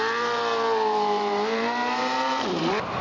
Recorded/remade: remade